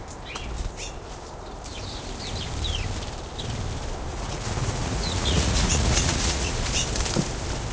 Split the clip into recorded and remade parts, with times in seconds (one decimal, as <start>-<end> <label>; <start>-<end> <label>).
0.0-4.1 recorded; 4.1-6.7 remade; 6.7-7.7 recorded